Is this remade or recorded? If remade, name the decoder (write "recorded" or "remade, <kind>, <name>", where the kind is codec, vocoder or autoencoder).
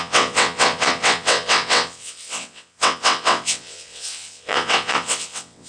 remade, vocoder, WaveNeXt